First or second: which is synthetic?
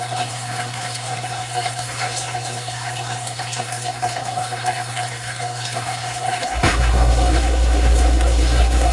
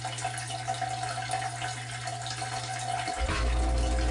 first